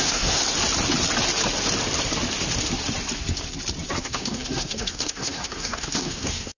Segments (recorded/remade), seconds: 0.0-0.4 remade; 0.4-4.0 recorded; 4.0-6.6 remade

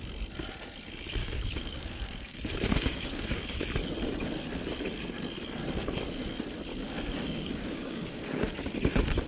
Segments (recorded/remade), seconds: 0.0-1.2 recorded; 1.2-3.6 remade; 3.6-6.7 recorded; 6.7-8.6 remade; 8.6-9.3 recorded

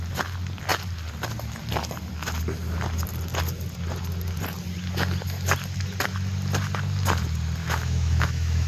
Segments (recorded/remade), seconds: 0.0-7.6 recorded; 7.6-8.7 remade

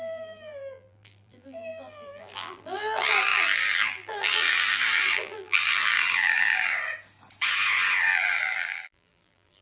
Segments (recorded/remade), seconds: 0.0-6.7 remade; 6.7-8.1 recorded; 8.1-9.6 remade

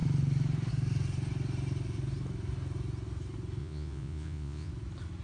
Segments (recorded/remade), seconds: 0.0-3.6 recorded; 3.6-4.7 remade; 4.7-5.2 recorded